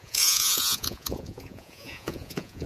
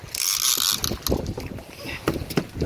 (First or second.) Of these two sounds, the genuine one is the second